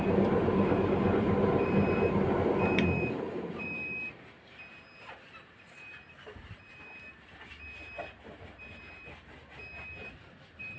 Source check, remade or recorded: remade